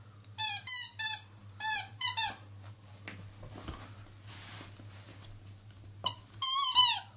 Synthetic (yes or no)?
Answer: no